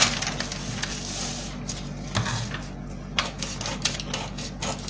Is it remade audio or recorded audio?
recorded